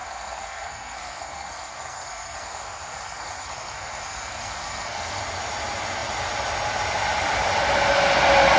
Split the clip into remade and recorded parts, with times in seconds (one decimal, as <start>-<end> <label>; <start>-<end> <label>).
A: 0.0-5.2 remade; 5.2-8.6 recorded